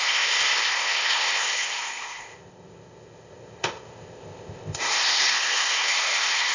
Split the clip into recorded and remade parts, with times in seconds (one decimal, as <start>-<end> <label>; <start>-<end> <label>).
0.0-6.5 remade